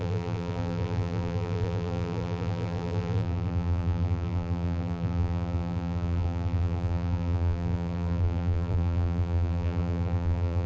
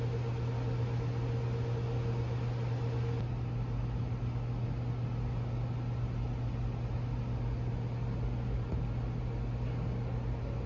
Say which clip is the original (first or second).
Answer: second